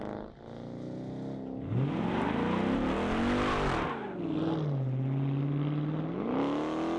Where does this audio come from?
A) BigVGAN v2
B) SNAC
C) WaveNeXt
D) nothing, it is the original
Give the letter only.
D